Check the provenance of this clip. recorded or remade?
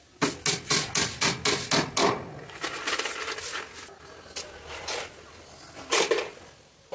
recorded